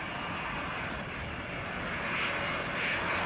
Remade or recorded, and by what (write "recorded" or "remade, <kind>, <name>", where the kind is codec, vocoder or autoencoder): recorded